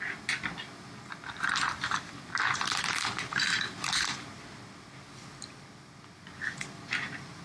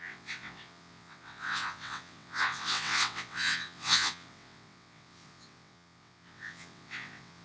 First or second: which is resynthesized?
second